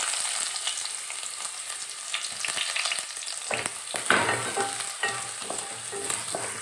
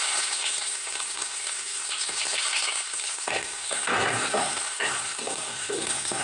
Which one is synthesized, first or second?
second